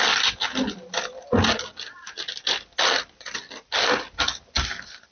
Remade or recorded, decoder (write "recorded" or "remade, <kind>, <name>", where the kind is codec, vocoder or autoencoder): recorded